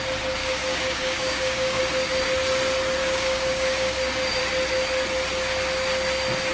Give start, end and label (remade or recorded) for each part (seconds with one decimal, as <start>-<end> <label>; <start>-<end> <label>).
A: 0.0-0.4 recorded; 0.4-1.8 remade; 1.8-3.0 recorded; 3.0-4.4 remade; 4.4-6.5 recorded